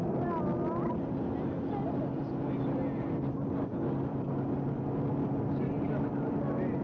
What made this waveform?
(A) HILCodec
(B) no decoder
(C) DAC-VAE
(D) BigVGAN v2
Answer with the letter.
B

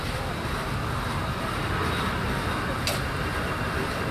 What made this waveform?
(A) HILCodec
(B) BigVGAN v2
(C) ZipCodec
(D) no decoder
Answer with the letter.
D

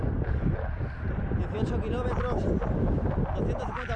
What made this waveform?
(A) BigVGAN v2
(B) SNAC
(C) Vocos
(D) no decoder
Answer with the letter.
D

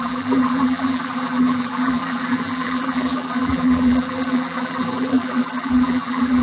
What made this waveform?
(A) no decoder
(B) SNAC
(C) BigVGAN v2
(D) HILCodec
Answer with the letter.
C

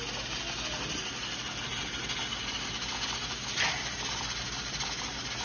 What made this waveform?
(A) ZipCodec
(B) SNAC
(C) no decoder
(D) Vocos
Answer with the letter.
C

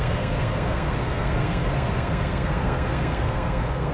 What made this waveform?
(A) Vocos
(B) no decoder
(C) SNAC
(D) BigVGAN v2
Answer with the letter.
C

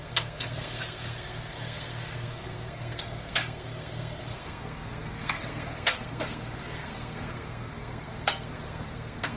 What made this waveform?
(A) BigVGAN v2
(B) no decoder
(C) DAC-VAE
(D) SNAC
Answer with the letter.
D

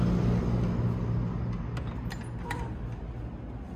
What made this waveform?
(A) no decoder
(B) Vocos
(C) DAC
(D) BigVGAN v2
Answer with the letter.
A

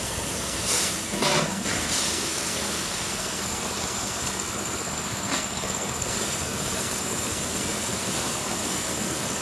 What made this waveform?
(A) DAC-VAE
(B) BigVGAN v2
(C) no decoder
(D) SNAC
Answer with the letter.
D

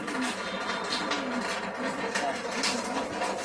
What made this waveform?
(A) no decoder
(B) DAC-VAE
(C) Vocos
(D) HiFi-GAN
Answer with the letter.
A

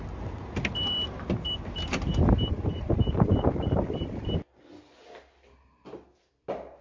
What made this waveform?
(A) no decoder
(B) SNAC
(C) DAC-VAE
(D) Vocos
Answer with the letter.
A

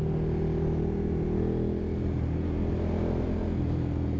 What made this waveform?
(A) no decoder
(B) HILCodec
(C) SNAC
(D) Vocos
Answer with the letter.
A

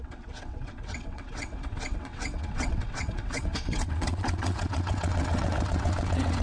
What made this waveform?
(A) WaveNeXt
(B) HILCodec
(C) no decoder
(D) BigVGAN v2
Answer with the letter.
A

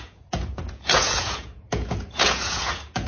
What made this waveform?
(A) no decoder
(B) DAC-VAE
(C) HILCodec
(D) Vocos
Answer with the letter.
D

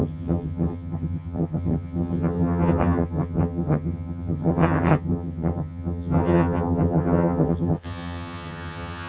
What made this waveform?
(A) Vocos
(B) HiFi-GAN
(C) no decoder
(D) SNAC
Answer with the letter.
B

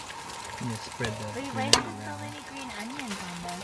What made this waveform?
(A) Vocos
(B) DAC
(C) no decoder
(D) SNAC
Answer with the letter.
C